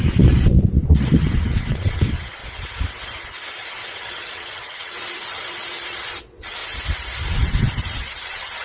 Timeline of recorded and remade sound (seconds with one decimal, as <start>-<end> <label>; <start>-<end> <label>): 0.0-2.4 remade; 2.4-3.7 recorded; 3.7-6.6 remade; 6.6-7.3 recorded; 7.3-8.6 remade